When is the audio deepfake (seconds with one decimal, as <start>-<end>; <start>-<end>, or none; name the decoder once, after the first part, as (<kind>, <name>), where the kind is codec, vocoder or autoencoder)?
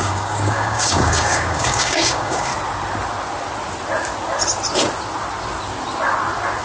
0.0-2.5 (codec, DAC)